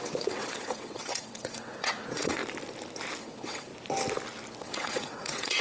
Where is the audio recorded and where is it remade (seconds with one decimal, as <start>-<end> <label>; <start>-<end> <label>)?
0.0-2.4 remade; 2.4-3.2 recorded; 3.2-3.7 remade; 3.7-4.6 recorded; 4.6-5.6 remade